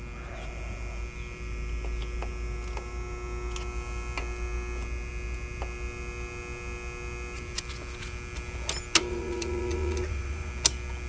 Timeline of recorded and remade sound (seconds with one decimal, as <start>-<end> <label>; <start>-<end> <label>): 0.0-9.1 recorded; 9.1-10.5 remade; 10.5-11.1 recorded